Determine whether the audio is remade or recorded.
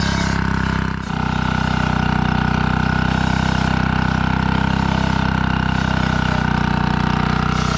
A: recorded